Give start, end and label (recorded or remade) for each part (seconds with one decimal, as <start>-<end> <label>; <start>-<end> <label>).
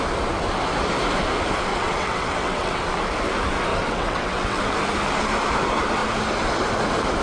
0.0-1.7 recorded; 1.7-2.8 remade; 2.8-3.7 recorded; 3.7-4.6 remade; 4.6-7.2 recorded